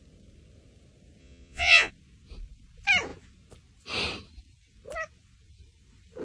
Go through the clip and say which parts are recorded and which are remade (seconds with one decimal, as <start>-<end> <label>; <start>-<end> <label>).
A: 0.0-1.2 recorded; 1.2-1.9 remade; 1.9-6.2 recorded